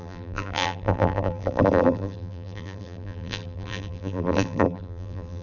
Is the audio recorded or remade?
remade